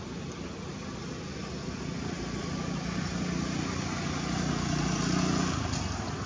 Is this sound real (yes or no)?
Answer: yes